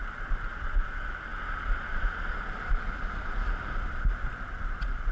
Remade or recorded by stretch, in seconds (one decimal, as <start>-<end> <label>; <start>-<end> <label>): 0.0-5.1 recorded